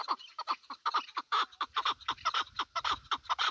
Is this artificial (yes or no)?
yes